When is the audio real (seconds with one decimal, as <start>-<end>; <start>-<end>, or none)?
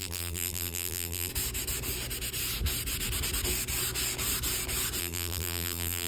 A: 1.3-5.0